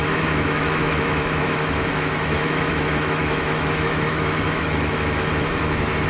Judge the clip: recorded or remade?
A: remade